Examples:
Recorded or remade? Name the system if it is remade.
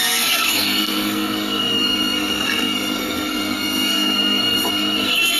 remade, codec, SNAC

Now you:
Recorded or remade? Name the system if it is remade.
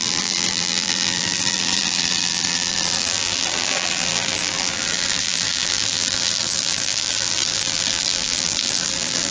remade, vocoder, BigVGAN v2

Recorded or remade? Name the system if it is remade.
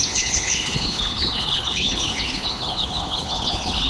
remade, codec, HILCodec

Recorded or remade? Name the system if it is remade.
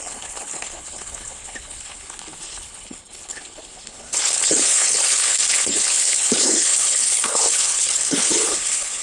remade, codec, HILCodec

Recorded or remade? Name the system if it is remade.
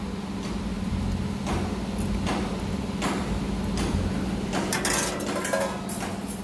recorded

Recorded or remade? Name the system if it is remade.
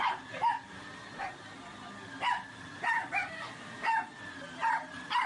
recorded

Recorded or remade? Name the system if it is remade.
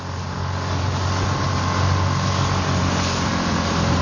recorded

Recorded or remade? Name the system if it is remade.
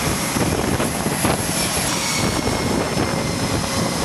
recorded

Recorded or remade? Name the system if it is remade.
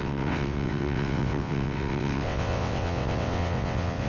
remade, vocoder, WaveNeXt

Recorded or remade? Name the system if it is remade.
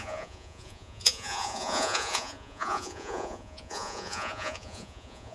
remade, vocoder, Vocos